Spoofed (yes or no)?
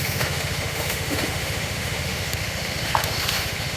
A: yes